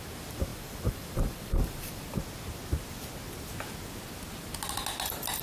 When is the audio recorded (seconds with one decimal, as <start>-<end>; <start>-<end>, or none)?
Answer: 0.0-0.5; 2.0-5.4